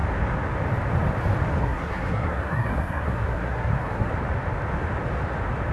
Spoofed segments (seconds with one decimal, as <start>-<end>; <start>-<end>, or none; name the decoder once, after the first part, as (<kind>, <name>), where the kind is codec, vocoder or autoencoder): 1.6-4.1 (codec, SNAC)